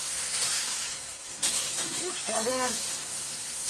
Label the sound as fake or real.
fake